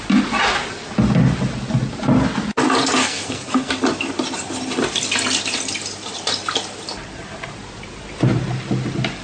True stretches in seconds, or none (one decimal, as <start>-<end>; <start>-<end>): 0.0-3.0; 3.7-9.2